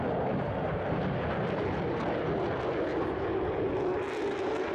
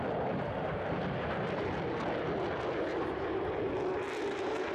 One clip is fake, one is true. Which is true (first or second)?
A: first